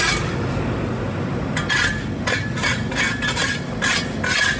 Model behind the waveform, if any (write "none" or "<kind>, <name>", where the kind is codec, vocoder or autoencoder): none